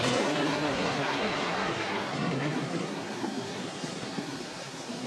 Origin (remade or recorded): remade